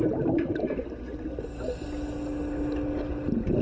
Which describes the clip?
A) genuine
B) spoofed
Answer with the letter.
A